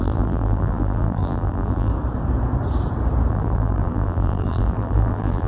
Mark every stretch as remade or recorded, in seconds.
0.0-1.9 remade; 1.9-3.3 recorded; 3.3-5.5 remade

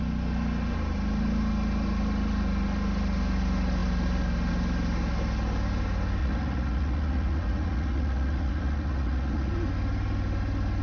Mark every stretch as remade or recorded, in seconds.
0.0-6.2 recorded; 6.2-9.5 remade; 9.5-10.8 recorded

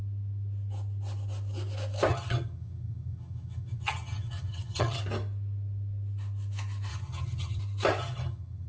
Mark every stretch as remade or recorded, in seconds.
0.0-2.1 recorded; 2.1-5.0 remade; 5.0-6.9 recorded; 6.9-7.6 remade; 7.6-8.0 recorded; 8.0-8.7 remade

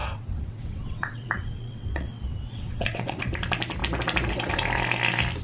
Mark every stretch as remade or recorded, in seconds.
0.0-3.2 remade; 3.2-5.4 recorded

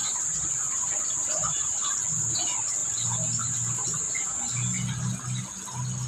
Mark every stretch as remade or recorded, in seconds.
0.0-1.7 remade; 1.7-2.8 recorded; 2.8-5.1 remade; 5.1-6.1 recorded

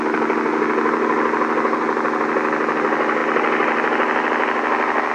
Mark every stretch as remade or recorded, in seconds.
0.0-5.1 recorded

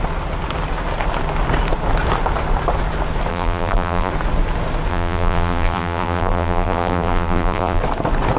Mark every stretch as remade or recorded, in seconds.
0.0-3.3 recorded; 3.3-4.1 remade; 4.1-4.9 recorded; 4.9-7.8 remade; 7.8-8.4 recorded